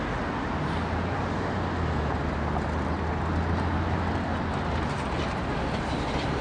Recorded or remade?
recorded